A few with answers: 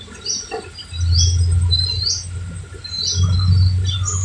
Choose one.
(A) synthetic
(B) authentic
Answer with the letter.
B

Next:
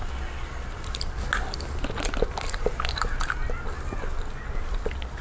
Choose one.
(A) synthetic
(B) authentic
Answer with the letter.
B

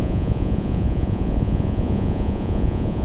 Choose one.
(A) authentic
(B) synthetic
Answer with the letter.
B